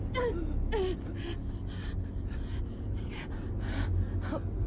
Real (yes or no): yes